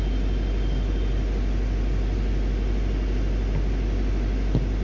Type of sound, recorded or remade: recorded